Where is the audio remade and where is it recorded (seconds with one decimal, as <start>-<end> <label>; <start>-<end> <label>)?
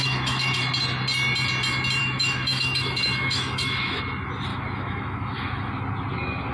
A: 0.0-0.6 remade; 0.6-2.0 recorded; 2.0-4.0 remade; 4.0-4.5 recorded; 4.5-5.7 remade; 5.7-6.5 recorded